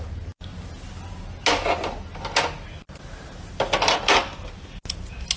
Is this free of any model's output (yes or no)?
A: yes